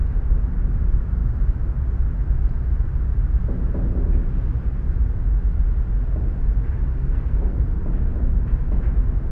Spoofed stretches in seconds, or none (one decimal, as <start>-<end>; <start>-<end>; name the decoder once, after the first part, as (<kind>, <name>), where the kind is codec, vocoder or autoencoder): 6.9-7.6 (codec, SNAC)